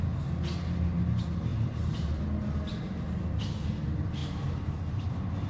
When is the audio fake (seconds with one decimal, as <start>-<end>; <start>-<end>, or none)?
1.5-2.2; 4.2-5.5